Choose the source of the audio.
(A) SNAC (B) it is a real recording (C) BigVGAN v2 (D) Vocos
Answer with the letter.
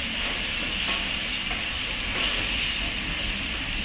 B